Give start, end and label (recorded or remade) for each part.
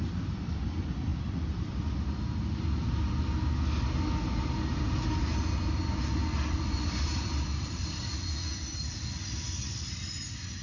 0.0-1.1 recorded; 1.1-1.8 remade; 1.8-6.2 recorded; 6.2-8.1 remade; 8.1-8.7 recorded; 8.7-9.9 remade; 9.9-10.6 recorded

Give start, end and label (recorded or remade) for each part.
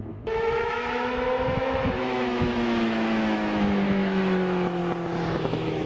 0.0-4.8 remade; 4.8-5.5 recorded; 5.5-5.9 remade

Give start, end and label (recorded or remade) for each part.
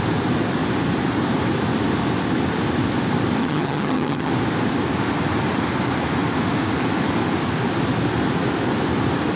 0.0-3.4 recorded; 3.4-4.3 remade; 4.3-9.4 recorded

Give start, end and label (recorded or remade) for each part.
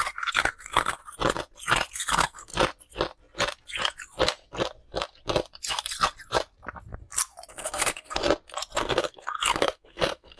0.0-1.0 remade; 1.0-1.9 recorded; 1.9-2.5 remade; 2.5-7.5 recorded; 7.5-8.2 remade; 8.2-8.8 recorded; 8.8-10.4 remade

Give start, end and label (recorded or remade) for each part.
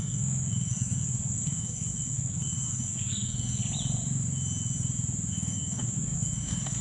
0.0-3.6 remade; 3.6-5.3 recorded; 5.3-6.8 remade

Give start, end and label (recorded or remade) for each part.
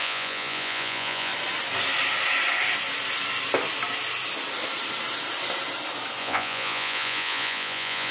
0.0-1.3 remade; 1.3-6.2 recorded; 6.2-8.1 remade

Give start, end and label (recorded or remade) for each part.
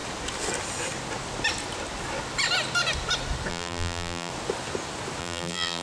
0.0-3.5 recorded; 3.5-4.3 remade; 4.3-5.2 recorded; 5.2-5.8 remade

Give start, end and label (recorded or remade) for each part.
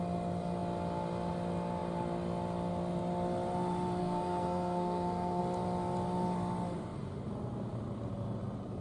0.0-4.0 recorded; 4.0-5.4 remade; 5.4-8.8 recorded